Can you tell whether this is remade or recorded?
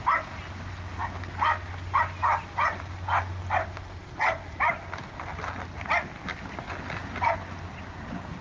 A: recorded